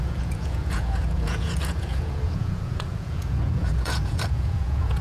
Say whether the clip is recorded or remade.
remade